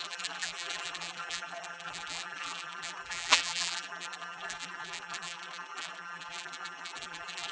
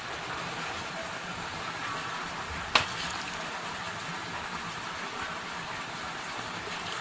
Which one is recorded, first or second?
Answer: second